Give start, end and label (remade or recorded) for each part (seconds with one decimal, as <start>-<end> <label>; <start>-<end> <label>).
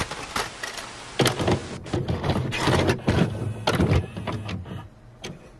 0.0-5.6 recorded